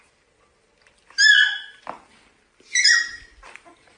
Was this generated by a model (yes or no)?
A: no